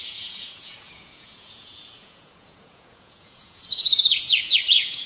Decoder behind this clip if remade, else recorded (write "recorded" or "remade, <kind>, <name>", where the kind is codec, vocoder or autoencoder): remade, vocoder, Vocos